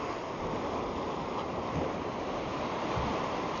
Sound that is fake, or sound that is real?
real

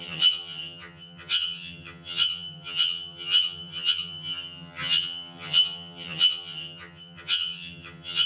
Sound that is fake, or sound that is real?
fake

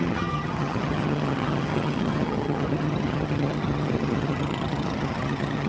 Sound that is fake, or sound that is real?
fake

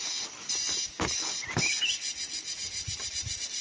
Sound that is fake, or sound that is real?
real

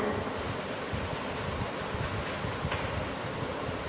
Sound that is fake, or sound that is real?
real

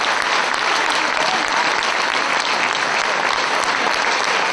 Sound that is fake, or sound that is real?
real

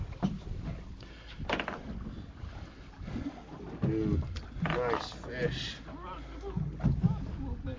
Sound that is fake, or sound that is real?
real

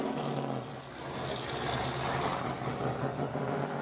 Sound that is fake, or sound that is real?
real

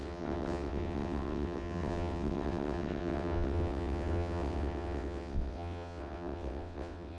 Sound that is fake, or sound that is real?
fake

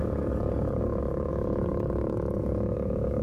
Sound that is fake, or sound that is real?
fake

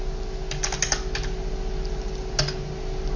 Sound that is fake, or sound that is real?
real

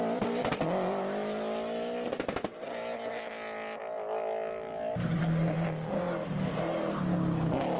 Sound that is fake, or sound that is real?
real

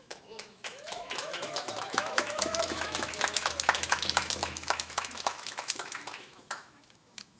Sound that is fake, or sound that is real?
fake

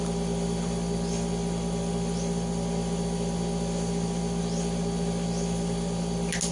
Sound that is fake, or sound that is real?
real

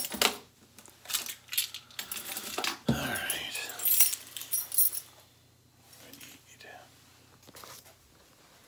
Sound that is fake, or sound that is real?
real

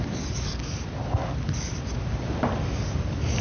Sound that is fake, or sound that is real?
fake